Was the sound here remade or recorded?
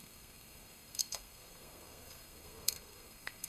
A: remade